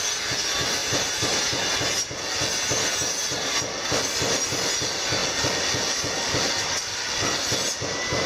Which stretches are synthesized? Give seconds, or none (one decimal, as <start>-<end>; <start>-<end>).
0.8-1.7